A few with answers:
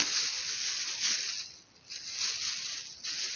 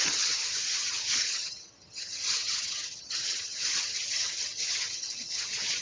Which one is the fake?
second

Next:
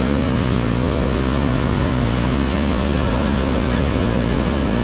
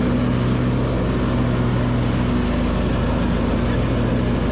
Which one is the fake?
first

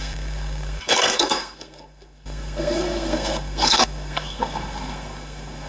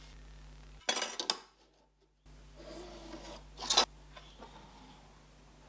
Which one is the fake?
first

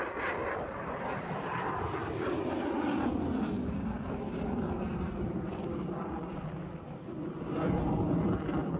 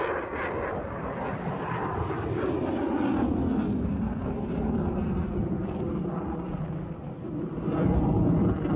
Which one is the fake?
first